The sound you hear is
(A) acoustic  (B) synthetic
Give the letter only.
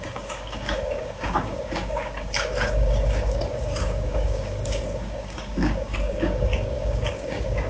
B